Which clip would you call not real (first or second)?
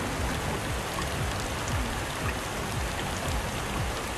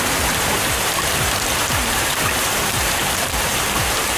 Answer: second